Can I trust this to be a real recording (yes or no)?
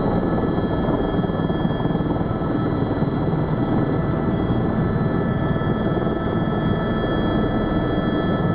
yes